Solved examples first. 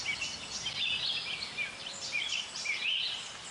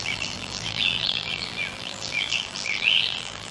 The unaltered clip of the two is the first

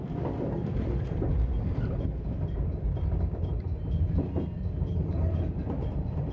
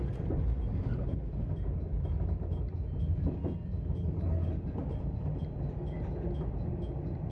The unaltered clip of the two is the second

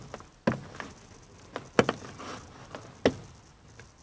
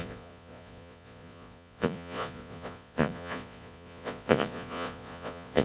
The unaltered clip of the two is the first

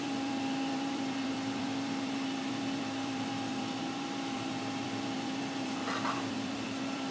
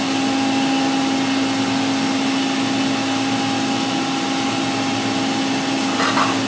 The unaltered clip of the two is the second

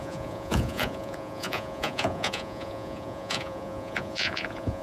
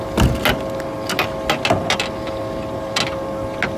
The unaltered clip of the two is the second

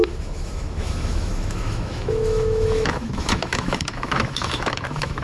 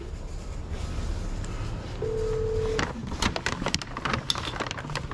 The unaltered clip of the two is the second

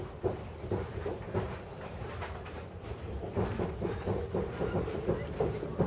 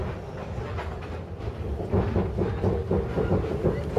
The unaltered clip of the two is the second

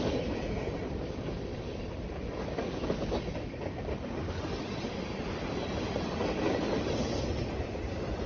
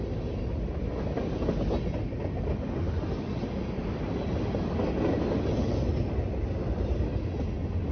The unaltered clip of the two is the second